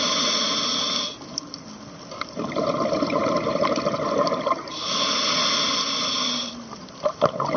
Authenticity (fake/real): real